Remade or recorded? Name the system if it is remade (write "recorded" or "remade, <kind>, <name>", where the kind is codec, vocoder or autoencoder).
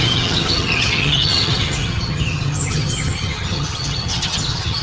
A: remade, vocoder, HiFi-GAN